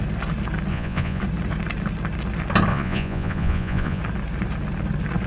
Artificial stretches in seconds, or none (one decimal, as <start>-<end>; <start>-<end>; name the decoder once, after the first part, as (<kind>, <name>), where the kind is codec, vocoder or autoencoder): 0.7-1.2 (vocoder, Vocos); 2.7-4.0